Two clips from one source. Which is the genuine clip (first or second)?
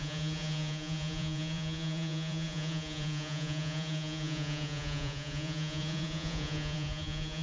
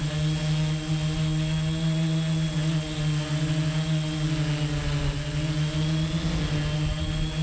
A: second